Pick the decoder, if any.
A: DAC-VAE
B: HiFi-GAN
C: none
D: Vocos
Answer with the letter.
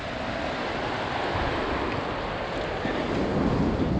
C